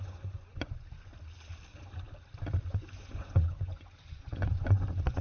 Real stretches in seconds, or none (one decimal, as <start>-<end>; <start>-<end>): 1.1-2.7